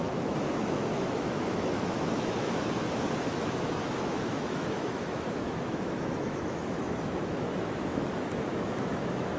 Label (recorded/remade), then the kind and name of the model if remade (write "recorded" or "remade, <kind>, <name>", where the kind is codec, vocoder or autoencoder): remade, autoencoder, DAC-VAE